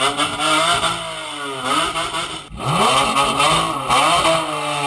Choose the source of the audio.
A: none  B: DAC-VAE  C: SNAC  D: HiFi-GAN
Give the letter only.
A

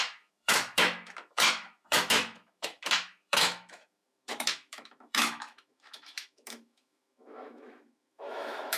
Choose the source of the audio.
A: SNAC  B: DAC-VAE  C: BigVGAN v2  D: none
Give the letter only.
B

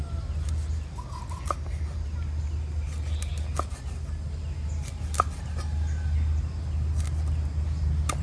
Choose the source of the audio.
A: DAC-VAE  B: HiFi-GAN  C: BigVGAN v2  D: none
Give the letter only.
D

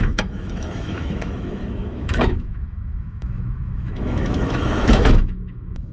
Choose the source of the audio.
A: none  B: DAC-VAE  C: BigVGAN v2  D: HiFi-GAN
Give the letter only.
B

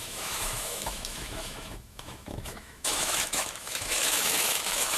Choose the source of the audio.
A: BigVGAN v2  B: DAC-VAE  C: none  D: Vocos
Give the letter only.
B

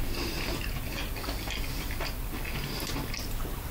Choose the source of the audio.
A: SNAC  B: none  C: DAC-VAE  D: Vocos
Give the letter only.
B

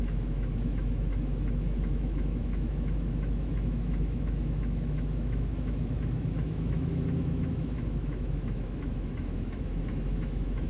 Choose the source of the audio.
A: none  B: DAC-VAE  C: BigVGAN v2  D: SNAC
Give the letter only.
B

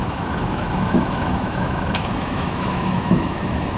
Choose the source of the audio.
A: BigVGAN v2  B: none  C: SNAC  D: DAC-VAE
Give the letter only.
D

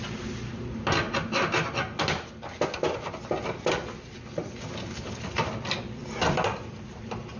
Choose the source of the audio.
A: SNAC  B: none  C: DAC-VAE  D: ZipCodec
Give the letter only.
B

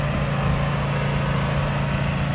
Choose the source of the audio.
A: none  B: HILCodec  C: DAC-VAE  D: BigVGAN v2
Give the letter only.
A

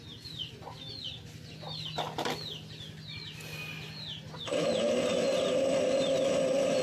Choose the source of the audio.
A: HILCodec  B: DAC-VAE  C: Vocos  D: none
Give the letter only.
D